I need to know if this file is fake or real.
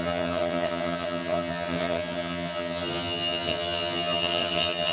fake